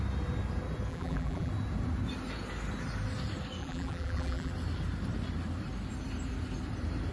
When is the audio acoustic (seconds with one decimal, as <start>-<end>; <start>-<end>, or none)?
0.0-0.9; 1.5-3.6; 4.5-7.1